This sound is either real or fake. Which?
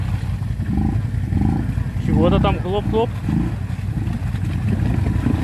real